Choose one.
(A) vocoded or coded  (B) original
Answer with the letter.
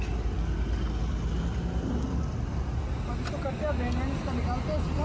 B